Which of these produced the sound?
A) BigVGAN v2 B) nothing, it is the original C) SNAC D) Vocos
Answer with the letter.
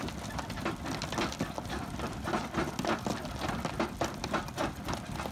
B